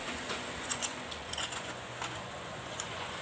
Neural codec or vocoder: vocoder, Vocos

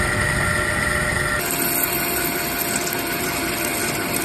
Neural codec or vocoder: none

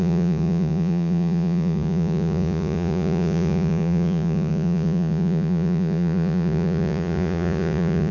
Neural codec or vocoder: vocoder, Vocos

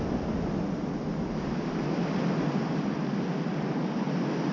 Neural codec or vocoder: none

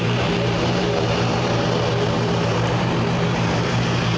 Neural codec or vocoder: vocoder, BigVGAN v2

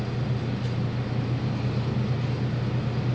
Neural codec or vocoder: none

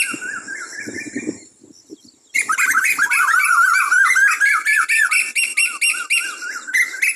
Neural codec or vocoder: none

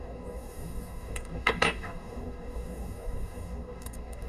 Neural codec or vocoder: codec, DAC